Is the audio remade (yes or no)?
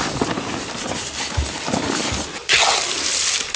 no